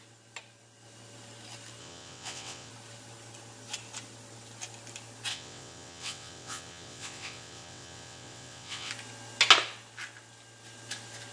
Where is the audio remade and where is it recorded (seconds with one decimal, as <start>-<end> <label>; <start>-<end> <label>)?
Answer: 0.0-1.8 recorded; 1.8-2.7 remade; 2.7-5.3 recorded; 5.3-8.9 remade; 8.9-11.3 recorded